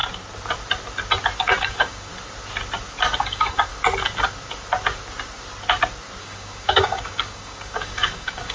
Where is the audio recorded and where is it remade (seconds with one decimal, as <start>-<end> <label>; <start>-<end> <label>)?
0.0-1.6 recorded; 1.6-2.1 remade; 2.1-3.2 recorded; 3.2-3.7 remade; 3.7-6.2 recorded; 6.2-8.5 remade